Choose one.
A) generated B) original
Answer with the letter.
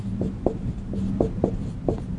A